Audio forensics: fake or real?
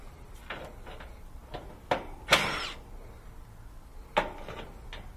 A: real